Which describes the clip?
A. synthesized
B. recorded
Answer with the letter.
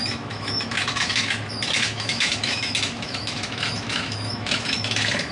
A